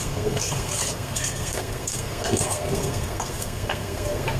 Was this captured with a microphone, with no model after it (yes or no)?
no